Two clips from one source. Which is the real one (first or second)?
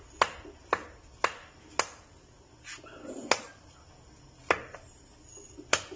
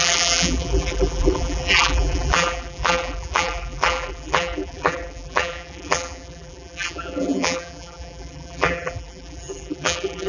first